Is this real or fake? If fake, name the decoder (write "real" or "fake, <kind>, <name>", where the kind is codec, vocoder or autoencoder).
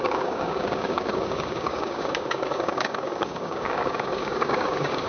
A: fake, codec, DAC